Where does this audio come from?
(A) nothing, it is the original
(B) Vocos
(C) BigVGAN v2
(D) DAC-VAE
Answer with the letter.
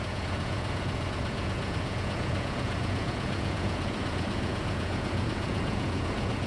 B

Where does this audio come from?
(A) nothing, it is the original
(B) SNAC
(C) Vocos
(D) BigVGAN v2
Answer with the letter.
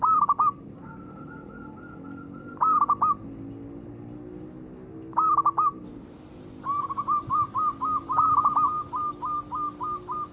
A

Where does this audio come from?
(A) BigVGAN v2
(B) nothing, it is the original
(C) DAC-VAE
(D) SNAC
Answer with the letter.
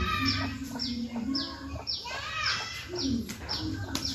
B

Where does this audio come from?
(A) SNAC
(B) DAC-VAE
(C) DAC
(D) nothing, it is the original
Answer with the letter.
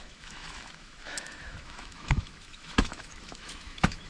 B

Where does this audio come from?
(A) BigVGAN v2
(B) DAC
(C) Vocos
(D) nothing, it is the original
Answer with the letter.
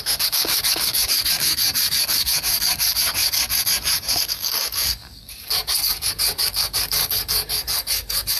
B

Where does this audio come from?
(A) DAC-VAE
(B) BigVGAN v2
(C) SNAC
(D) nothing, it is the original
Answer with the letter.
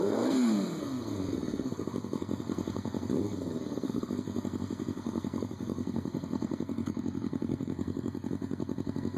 C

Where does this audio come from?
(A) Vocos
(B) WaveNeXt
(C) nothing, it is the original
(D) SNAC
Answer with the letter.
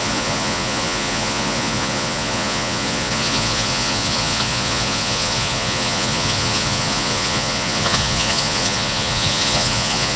A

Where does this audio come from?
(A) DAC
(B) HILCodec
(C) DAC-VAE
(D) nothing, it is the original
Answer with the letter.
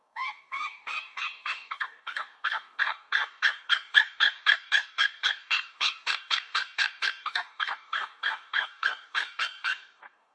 A